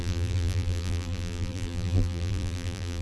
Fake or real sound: fake